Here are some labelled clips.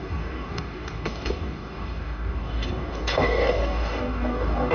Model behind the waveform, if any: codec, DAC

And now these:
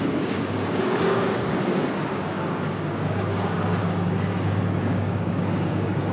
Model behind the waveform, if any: codec, DAC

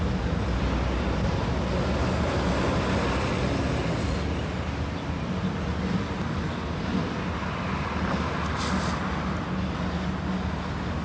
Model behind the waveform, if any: none